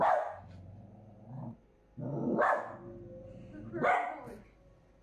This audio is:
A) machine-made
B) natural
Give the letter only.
B